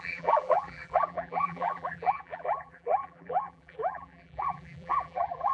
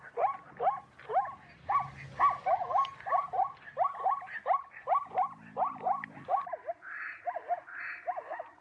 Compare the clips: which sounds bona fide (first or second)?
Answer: second